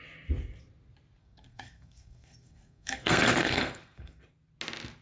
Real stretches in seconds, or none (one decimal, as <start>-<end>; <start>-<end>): 0.0-1.2; 4.2-5.0